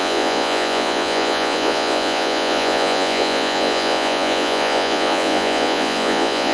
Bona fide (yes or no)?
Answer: no